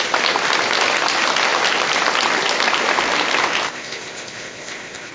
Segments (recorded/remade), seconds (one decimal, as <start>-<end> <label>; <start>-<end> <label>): 0.0-3.7 recorded; 3.7-5.1 remade